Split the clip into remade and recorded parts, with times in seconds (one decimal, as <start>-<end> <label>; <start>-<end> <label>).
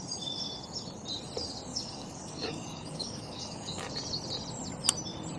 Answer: 0.0-1.7 recorded; 1.7-3.9 remade; 3.9-5.4 recorded